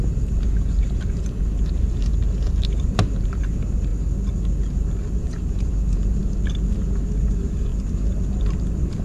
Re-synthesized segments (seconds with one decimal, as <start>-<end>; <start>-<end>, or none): 0.0-2.1; 2.6-3.9; 5.2-6.2; 7.2-9.0